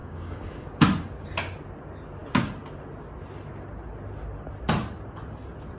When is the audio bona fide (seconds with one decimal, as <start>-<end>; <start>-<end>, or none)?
0.7-5.8